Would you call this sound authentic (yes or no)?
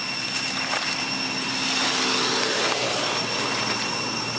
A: yes